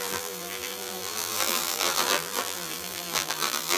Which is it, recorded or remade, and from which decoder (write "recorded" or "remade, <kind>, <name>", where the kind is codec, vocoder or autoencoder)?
remade, vocoder, BigVGAN v2